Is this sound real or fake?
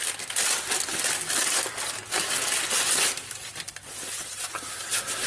real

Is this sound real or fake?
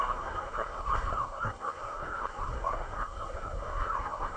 fake